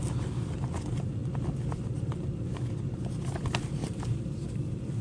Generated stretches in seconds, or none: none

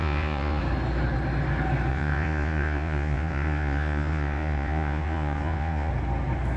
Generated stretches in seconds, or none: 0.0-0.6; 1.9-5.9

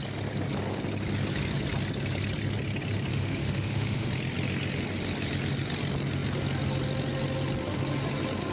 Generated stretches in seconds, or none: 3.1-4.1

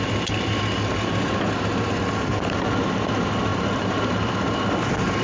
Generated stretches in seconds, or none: none